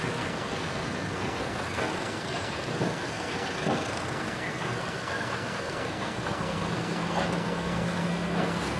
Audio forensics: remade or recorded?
remade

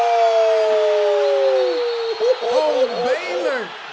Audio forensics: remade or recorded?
recorded